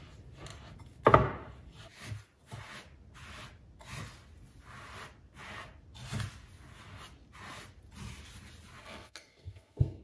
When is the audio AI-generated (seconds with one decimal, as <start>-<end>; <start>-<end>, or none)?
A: 8.8-10.0